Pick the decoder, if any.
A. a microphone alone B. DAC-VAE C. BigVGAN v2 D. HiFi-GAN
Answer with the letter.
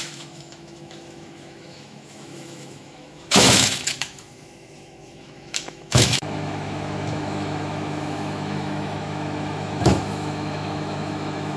B